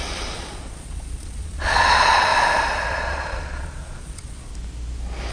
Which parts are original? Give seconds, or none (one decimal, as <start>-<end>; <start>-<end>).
2.3-2.9; 4.5-5.3